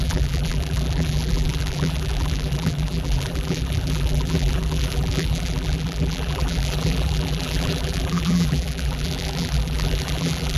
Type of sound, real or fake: fake